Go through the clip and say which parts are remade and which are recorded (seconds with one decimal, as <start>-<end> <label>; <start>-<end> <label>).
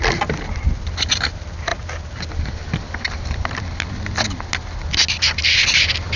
0.0-6.2 recorded